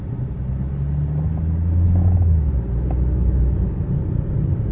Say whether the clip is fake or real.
real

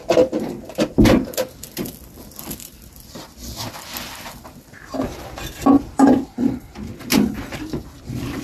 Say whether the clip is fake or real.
fake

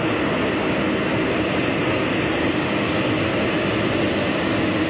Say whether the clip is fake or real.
real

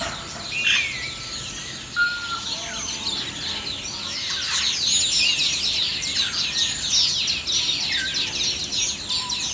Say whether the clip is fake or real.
real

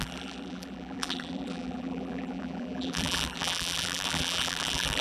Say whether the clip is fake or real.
fake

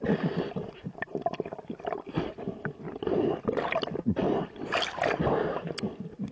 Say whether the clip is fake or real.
real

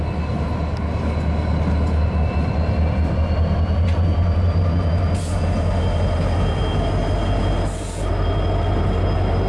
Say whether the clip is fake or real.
real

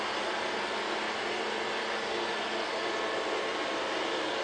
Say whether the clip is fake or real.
real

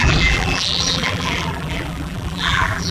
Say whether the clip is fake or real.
fake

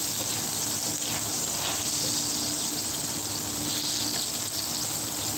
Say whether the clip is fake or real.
real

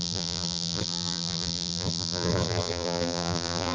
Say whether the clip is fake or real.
fake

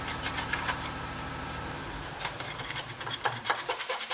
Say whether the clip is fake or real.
fake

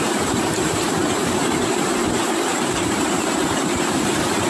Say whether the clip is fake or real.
fake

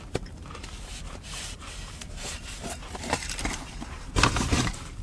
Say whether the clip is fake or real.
fake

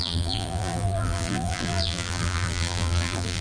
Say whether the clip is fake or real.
fake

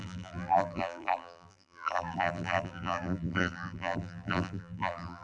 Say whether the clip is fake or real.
fake